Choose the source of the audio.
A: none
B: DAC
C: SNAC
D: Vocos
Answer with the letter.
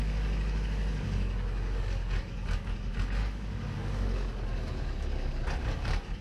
B